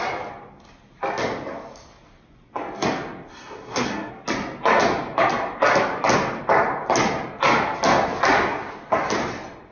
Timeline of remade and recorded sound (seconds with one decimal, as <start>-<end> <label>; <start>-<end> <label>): 0.0-3.3 recorded; 3.3-4.1 remade; 4.1-9.7 recorded